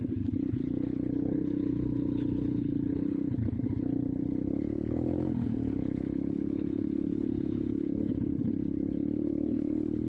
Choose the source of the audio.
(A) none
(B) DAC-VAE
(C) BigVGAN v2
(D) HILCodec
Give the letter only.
D